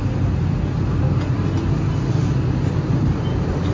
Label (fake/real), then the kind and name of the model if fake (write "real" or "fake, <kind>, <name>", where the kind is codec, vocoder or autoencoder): real